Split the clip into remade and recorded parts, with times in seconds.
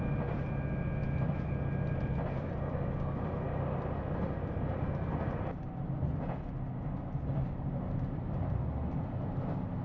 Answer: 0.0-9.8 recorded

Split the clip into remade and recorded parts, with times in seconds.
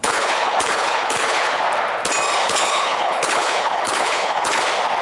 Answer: 0.0-1.6 remade; 1.6-2.4 recorded; 2.4-4.6 remade; 4.6-5.0 recorded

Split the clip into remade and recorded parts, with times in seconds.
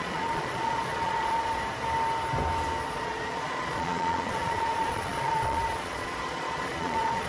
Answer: 0.0-1.6 remade; 1.6-2.9 recorded; 2.9-7.3 remade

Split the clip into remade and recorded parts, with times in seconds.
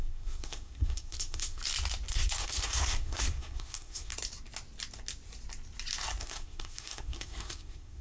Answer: 0.0-1.6 remade; 1.6-2.1 recorded; 2.1-4.1 remade; 4.1-6.2 recorded; 6.2-8.0 remade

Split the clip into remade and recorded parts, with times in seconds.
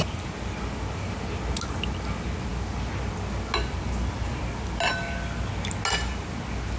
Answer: 0.0-6.8 recorded